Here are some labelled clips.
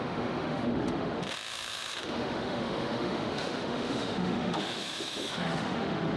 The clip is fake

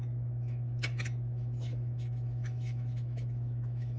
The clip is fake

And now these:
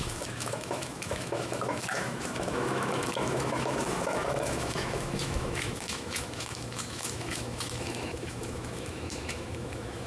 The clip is fake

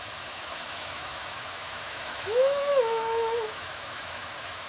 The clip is fake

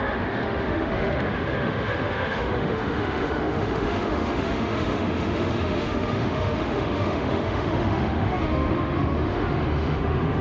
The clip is fake